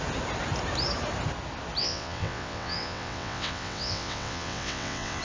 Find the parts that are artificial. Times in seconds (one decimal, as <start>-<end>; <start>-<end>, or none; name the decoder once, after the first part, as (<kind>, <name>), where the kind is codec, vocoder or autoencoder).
1.8-5.2 (vocoder, WaveNeXt)